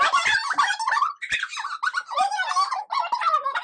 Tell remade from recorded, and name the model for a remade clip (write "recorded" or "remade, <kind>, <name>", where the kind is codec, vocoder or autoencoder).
recorded